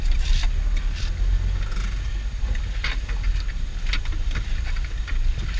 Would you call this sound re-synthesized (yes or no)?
no